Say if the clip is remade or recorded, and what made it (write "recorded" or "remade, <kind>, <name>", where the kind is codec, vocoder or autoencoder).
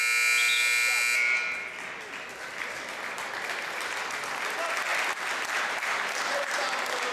recorded